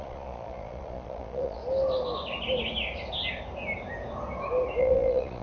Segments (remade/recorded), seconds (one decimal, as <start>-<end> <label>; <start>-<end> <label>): 0.0-1.6 remade; 1.6-4.8 recorded; 4.8-5.4 remade